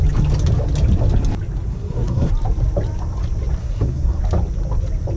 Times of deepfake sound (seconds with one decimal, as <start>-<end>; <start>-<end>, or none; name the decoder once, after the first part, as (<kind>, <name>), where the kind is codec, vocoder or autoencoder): 1.7-2.3 (codec, SNAC); 3.6-4.2